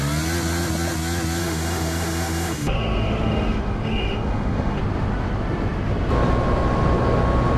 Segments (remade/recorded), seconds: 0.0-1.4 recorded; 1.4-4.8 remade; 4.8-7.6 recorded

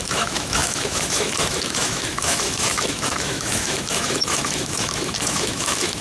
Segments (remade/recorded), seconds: 0.0-6.0 remade

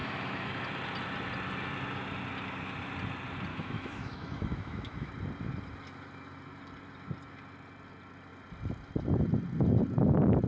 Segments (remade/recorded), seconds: 0.0-0.5 remade; 0.5-3.5 recorded; 3.5-5.1 remade; 5.1-10.5 recorded